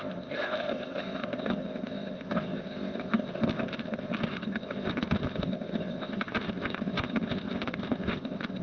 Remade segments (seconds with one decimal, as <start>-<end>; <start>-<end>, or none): 0.0-8.6